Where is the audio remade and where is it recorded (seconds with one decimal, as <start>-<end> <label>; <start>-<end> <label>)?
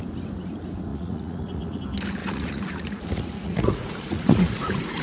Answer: 0.0-0.9 recorded; 0.9-1.8 remade; 1.8-2.2 recorded; 2.2-5.0 remade